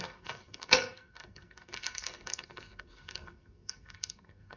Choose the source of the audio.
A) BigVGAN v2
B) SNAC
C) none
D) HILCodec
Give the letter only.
B